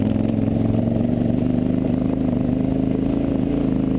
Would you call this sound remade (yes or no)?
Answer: no